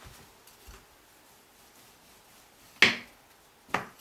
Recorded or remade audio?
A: recorded